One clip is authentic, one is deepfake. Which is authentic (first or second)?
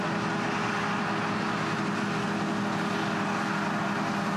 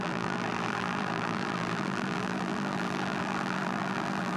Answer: first